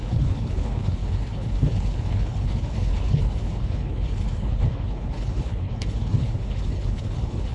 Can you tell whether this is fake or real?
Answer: fake